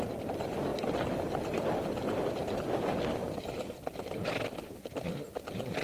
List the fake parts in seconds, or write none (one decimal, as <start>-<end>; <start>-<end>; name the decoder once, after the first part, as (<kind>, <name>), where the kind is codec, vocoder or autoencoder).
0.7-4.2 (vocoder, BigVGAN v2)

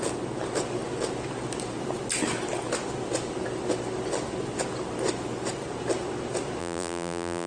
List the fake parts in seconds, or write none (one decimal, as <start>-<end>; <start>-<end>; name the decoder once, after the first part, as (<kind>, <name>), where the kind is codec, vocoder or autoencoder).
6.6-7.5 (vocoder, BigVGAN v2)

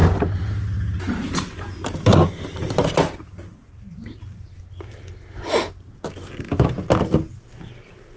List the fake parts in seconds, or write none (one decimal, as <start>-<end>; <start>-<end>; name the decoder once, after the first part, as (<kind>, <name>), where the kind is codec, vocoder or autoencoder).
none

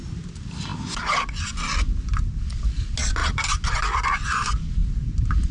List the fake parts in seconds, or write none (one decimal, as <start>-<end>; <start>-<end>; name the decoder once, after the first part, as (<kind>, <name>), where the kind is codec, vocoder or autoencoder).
none

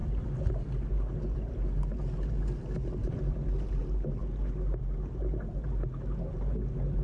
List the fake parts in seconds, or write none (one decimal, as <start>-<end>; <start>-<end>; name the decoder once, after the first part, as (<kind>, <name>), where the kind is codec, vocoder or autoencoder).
0.0-1.8 (vocoder, BigVGAN v2); 3.0-3.8

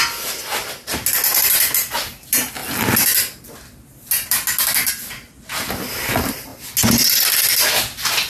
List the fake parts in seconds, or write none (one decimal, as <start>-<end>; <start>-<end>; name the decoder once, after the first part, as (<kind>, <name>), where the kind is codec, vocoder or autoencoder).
1.3-1.9 (vocoder, BigVGAN v2)

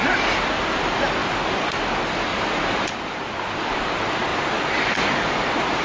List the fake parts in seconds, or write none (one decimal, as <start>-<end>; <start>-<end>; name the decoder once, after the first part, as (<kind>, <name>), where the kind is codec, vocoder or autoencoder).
2.3-3.9 (vocoder, BigVGAN v2)